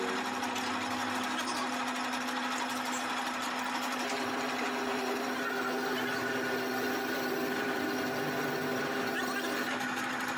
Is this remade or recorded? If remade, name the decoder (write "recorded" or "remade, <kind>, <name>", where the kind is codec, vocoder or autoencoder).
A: recorded